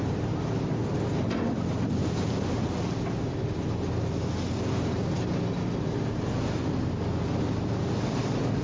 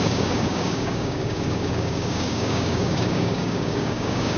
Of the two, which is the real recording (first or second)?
first